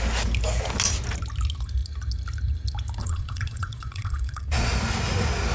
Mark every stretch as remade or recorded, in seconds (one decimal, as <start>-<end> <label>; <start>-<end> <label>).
0.0-3.0 recorded; 3.0-4.7 remade; 4.7-5.5 recorded